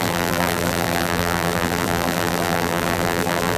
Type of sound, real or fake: fake